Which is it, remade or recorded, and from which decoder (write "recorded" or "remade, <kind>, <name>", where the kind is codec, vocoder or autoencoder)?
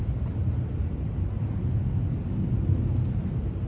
recorded